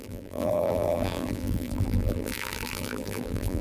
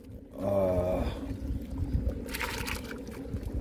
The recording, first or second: second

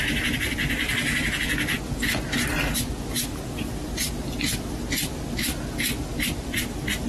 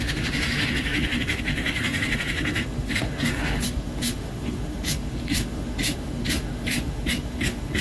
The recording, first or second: first